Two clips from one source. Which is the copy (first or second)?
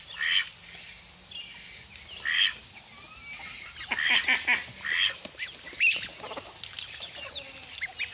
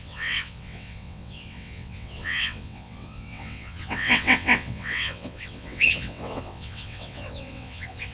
second